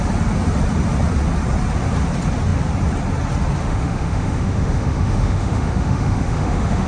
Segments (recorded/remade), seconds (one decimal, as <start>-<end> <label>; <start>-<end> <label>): 0.0-3.6 recorded; 3.6-6.9 remade